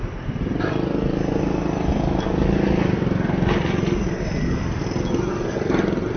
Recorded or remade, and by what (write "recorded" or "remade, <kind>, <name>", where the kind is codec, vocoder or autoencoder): recorded